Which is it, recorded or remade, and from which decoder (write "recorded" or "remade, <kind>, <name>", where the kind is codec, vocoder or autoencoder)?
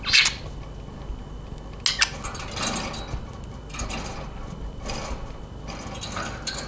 recorded